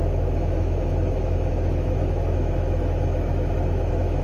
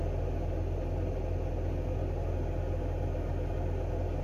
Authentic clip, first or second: second